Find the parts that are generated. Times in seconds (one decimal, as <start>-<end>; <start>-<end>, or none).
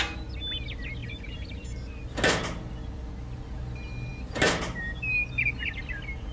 1.0-1.6